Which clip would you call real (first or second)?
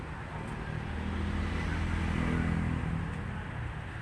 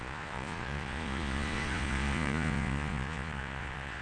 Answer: first